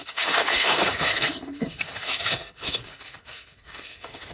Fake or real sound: fake